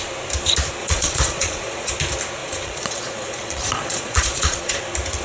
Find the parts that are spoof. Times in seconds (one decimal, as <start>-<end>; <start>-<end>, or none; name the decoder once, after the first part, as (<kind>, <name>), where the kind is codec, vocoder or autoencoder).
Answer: 0.8-1.9 (vocoder, Vocos); 2.4-4.8

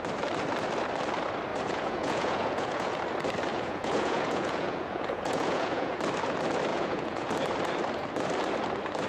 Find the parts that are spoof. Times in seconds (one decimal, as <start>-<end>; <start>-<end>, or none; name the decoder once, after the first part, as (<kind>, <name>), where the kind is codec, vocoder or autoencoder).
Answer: 1.5-3.0 (vocoder, Vocos); 3.5-6.0; 6.7-7.3

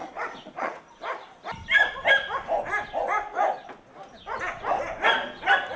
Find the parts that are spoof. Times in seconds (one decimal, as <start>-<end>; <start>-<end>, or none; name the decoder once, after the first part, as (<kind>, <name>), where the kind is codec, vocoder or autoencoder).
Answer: 0.0-0.8 (vocoder, Vocos)

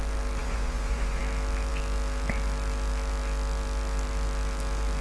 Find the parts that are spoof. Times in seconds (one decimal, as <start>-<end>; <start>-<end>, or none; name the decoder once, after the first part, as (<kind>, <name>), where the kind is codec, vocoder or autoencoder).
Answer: 0.4-1.2 (vocoder, Vocos)